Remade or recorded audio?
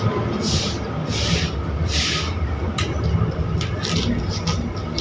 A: recorded